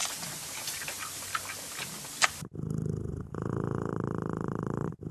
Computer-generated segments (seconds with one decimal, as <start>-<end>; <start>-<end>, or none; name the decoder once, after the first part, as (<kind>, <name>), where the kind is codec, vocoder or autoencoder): 3.1-3.9 (vocoder, Vocos)